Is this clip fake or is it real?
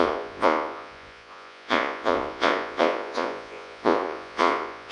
fake